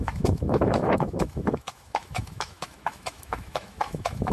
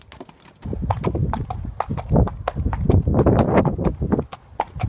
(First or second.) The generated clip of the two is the first